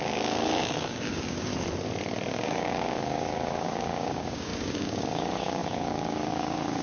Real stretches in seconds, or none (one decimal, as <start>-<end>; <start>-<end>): 1.5-2.3

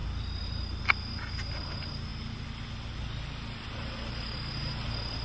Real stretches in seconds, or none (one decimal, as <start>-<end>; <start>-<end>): 0.0-5.2

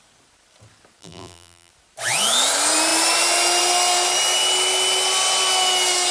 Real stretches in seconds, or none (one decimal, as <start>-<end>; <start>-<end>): 0.0-1.0; 1.7-6.1

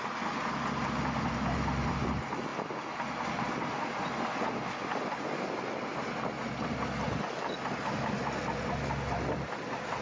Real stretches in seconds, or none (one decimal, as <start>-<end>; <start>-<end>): 0.0-10.0

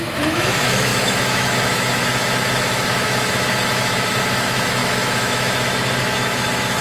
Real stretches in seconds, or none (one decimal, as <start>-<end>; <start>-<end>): none

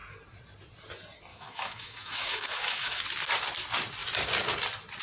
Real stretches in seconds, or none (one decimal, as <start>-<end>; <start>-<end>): 0.0-1.3; 3.0-5.0